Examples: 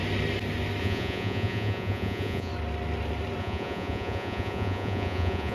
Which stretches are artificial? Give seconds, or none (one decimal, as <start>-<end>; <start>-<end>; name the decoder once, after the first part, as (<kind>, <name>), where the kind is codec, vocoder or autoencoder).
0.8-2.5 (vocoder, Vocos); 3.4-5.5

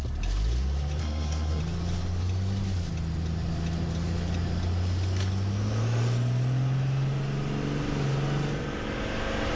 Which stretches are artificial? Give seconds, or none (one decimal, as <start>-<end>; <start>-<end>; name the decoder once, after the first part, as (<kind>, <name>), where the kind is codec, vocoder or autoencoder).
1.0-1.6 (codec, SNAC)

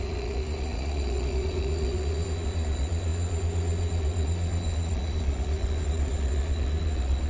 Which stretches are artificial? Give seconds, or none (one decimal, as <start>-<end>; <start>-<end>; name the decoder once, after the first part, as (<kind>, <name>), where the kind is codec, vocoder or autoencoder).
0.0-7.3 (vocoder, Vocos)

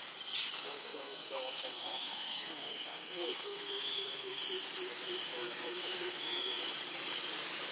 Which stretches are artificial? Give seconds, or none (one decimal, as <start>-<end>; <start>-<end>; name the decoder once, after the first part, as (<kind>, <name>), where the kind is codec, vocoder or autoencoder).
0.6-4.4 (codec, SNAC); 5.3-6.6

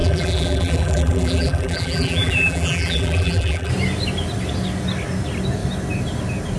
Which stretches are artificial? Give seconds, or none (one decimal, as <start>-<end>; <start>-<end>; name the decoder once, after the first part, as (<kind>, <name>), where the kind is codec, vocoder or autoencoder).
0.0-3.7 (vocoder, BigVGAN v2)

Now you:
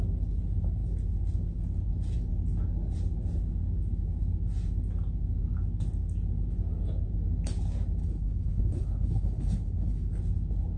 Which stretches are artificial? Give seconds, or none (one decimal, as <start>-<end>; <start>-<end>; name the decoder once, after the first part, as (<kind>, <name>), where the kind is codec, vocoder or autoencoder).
8.0-10.1 (codec, HILCodec)

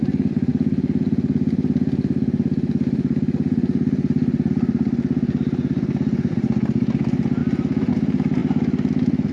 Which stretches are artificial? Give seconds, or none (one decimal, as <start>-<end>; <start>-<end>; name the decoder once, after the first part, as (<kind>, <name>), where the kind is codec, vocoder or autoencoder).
none